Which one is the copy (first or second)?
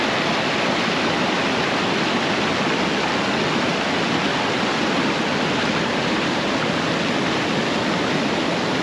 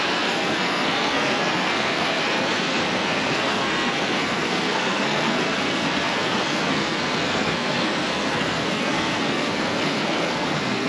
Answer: second